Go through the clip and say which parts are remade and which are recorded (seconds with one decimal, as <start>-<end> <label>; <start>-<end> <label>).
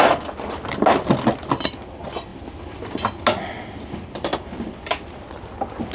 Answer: 0.0-5.9 recorded